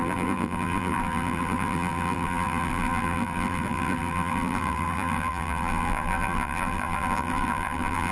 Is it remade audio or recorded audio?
remade